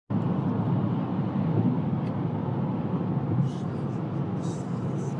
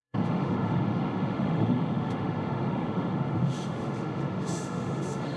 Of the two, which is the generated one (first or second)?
second